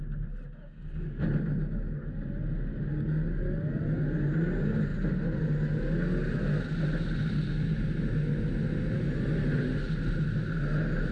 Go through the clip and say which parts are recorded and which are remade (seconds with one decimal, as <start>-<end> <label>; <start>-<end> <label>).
0.0-11.1 recorded